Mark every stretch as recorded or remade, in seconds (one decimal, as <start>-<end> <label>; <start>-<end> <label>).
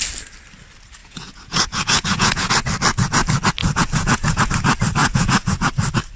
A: 0.0-1.0 recorded; 1.0-2.5 remade; 2.5-3.6 recorded; 3.6-4.5 remade; 4.5-5.0 recorded; 5.0-5.7 remade; 5.7-6.2 recorded